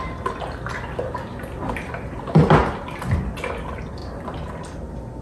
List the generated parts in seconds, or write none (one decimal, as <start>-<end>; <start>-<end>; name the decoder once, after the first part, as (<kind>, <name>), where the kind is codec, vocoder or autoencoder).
1.3-1.9 (vocoder, BigVGAN v2); 4.0-4.5